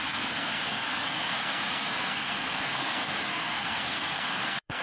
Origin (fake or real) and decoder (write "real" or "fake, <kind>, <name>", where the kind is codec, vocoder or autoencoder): fake, codec, SNAC